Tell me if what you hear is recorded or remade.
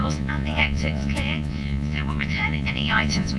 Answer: remade